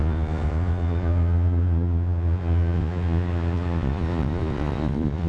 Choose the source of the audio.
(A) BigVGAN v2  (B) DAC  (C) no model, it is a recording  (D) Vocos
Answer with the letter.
D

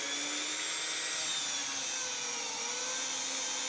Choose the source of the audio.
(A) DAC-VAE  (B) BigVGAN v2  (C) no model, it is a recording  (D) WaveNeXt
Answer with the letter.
C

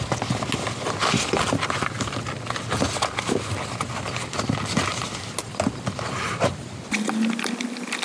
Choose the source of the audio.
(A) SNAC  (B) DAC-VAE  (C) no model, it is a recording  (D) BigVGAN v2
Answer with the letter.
C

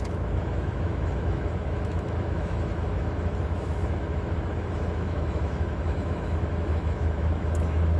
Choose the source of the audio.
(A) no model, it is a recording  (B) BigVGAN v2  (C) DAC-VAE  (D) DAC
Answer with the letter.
C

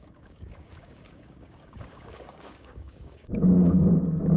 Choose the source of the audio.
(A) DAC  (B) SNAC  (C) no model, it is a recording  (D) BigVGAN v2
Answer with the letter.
A